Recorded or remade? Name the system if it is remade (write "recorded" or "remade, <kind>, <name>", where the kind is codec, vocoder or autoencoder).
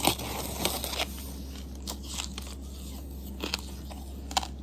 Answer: recorded